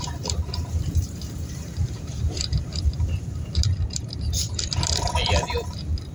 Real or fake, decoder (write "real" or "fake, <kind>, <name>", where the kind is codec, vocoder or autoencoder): fake, vocoder, BigVGAN v2